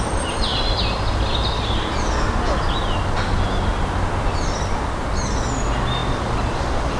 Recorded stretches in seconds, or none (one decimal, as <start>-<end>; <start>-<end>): 0.0-7.0